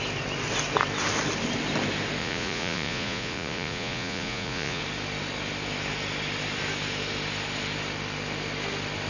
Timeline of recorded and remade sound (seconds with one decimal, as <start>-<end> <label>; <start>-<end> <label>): 0.0-2.2 recorded; 2.2-4.8 remade; 4.8-9.1 recorded